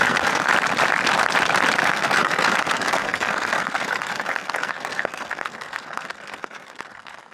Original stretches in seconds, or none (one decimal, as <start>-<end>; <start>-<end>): 0.5-1.8